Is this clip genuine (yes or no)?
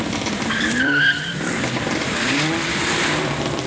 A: no